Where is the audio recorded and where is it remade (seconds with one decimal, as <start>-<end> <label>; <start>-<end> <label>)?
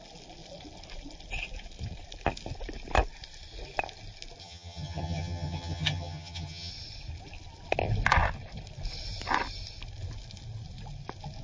0.0-4.4 recorded; 4.4-6.7 remade; 6.7-11.4 recorded